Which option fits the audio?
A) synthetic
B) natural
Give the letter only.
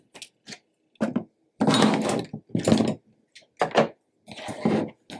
B